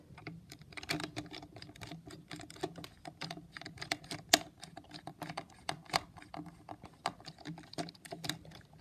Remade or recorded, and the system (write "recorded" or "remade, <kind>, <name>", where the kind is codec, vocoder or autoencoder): recorded